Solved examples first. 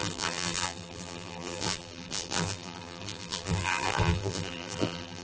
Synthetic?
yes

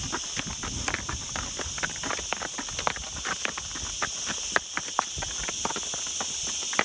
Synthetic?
no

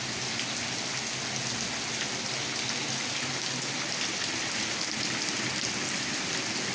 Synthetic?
no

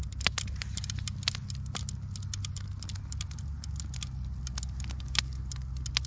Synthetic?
no